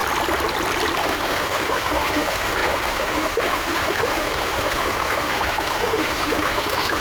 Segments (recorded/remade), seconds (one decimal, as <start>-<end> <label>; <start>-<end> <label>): 0.0-1.0 recorded; 1.0-7.0 remade